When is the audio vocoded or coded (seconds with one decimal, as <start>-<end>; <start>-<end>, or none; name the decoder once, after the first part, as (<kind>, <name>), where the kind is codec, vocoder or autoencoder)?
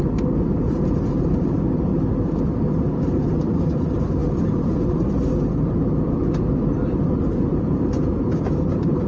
0.0-1.9 (vocoder, BigVGAN v2); 2.9-6.2; 6.9-9.1